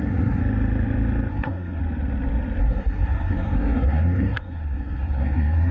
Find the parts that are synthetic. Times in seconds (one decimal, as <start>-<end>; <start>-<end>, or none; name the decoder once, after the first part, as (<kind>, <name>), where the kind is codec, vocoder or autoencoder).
0.0-0.4 (codec, SNAC); 1.3-1.8; 2.6-5.7